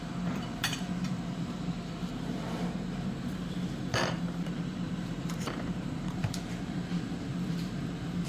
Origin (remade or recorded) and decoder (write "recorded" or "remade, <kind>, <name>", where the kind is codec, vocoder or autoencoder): remade, vocoder, BigVGAN v2